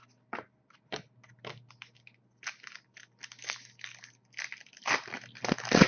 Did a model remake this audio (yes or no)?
no